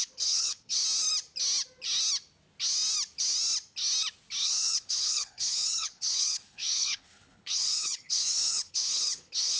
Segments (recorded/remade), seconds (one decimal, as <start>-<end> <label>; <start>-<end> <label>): 0.0-0.8 remade; 0.8-4.4 recorded; 4.4-9.6 remade